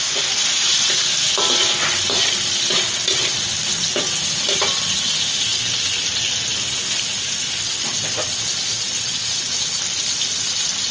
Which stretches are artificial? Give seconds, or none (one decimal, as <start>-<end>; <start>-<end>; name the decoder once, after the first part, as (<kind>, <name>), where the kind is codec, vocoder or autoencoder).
none